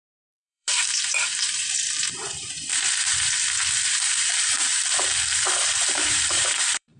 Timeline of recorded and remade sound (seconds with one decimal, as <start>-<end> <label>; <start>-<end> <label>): 0.0-2.7 remade; 2.7-4.3 recorded; 4.3-4.7 remade; 4.7-5.9 recorded; 5.9-7.0 remade